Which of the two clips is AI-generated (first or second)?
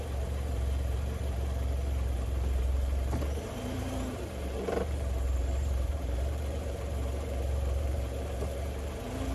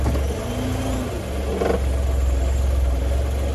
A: first